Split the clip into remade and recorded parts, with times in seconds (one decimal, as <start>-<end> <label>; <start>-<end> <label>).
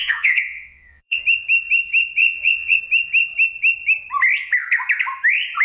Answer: 0.0-1.2 remade; 1.2-2.2 recorded; 2.2-2.8 remade; 2.8-5.6 recorded